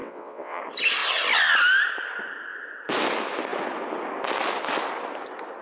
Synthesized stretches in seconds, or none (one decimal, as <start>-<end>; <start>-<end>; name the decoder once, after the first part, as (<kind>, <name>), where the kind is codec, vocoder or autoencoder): 0.0-0.6 (vocoder, WaveNeXt)